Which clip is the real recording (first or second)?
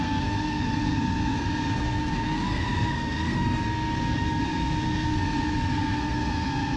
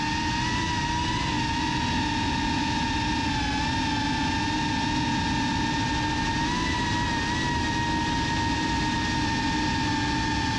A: second